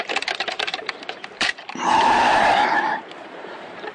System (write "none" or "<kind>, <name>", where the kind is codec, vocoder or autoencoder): vocoder, BigVGAN v2